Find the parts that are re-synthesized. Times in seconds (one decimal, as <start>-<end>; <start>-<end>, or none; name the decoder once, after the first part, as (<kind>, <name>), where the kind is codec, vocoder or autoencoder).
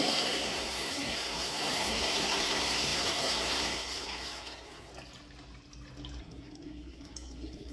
0.0-4.9 (codec, SNAC); 6.2-7.7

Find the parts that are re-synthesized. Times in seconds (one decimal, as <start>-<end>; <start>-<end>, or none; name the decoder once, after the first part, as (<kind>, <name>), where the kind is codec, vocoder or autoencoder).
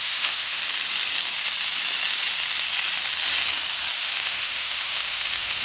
0.0-0.6 (autoencoder, DAC-VAE); 4.0-5.6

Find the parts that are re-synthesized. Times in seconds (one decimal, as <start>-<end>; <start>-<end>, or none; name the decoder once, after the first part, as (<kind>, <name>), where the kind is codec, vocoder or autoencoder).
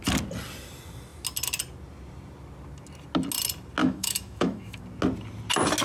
3.8-4.8 (autoencoder, DAC-VAE)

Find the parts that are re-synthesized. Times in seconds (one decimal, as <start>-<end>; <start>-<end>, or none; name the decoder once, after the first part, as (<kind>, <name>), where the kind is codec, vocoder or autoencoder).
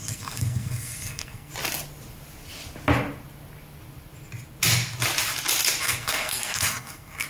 0.0-1.5 (codec, SNAC); 5.8-7.3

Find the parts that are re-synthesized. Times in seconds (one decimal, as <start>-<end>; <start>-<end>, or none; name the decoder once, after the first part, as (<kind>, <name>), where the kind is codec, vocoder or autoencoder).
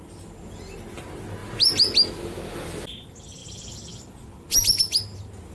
none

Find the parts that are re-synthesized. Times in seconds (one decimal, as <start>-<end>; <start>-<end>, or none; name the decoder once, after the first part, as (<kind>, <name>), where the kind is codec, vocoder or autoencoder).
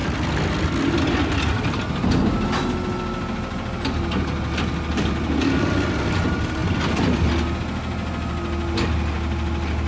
none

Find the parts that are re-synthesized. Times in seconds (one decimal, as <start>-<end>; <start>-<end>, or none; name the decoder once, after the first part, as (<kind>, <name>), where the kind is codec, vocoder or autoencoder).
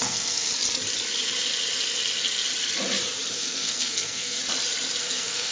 0.0-0.5 (codec, SNAC); 3.3-4.4; 5.0-5.5